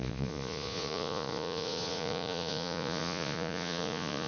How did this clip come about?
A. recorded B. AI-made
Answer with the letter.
B